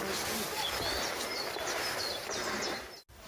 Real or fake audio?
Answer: real